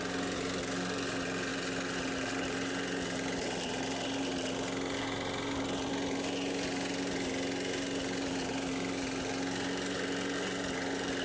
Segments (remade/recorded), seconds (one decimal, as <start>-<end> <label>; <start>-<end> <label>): 0.0-11.2 recorded